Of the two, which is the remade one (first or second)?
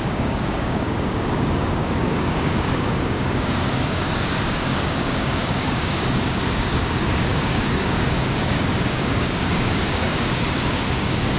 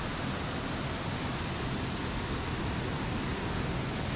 first